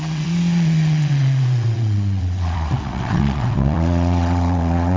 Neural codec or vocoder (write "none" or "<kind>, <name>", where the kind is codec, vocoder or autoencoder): vocoder, WaveNeXt